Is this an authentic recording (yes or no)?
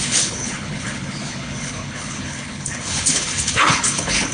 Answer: no